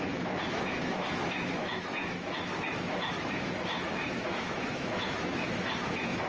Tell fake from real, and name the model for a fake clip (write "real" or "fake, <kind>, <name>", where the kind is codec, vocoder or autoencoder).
fake, autoencoder, DAC-VAE